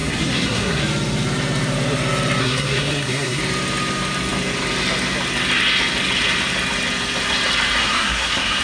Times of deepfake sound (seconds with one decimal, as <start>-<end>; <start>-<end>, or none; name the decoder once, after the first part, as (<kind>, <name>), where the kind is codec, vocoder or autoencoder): 0.0-0.8 (codec, SNAC); 2.4-3.4; 7.8-8.6